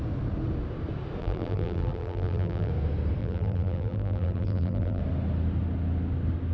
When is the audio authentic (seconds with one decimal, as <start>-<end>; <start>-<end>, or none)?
0.0-1.2; 2.7-3.2; 5.0-6.5